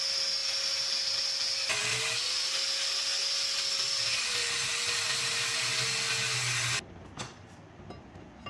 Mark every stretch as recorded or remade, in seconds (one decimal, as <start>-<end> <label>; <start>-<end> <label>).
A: 0.0-8.5 recorded